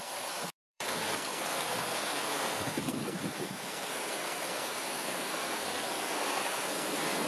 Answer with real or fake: fake